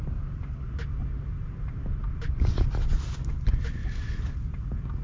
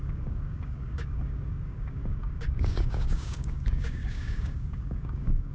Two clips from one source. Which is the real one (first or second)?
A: first